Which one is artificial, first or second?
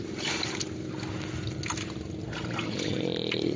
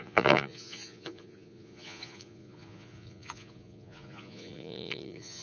second